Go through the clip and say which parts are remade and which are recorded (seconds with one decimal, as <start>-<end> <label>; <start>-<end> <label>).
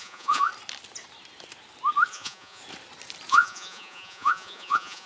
0.0-0.5 remade; 0.5-2.1 recorded; 2.1-2.6 remade; 2.6-3.3 recorded; 3.3-5.1 remade